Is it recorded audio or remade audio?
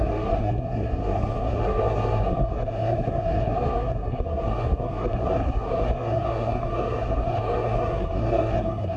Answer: remade